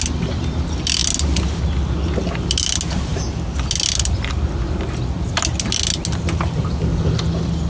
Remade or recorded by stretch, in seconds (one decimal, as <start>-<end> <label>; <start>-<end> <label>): 0.0-7.7 recorded